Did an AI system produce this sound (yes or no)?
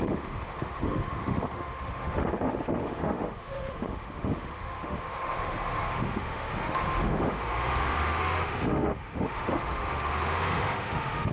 yes